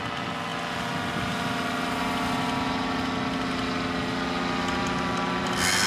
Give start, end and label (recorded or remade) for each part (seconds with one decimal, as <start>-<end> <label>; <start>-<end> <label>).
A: 0.0-5.9 recorded